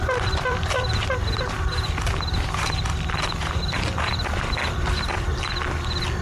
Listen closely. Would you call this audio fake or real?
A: real